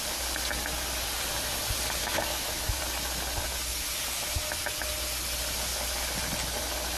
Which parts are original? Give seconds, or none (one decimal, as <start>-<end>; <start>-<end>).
0.0-2.0; 2.8-7.0

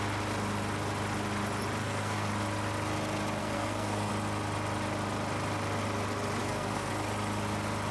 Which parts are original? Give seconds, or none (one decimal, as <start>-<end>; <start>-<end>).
0.0-1.8; 2.3-3.4; 4.1-6.4; 6.9-7.9